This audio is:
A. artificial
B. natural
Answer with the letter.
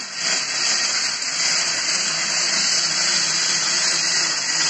B